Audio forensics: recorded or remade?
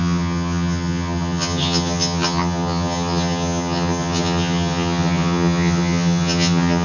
remade